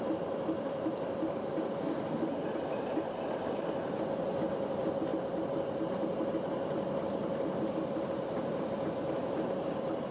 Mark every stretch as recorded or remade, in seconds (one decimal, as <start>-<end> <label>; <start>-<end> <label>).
0.0-10.1 recorded